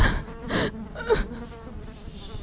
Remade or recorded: recorded